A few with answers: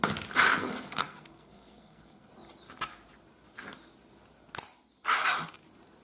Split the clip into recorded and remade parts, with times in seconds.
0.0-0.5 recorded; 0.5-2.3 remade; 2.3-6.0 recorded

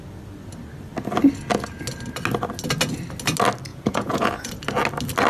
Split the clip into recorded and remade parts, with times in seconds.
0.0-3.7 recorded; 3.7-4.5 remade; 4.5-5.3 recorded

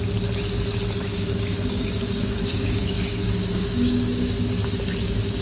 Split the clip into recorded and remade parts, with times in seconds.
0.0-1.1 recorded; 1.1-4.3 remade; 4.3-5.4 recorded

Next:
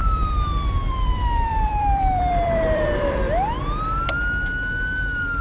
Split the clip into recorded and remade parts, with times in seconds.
0.0-3.2 remade; 3.2-5.4 recorded